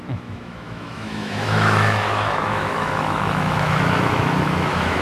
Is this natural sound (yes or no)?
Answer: no